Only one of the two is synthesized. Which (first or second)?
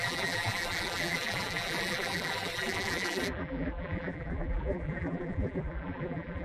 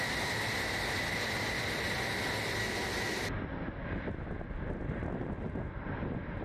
first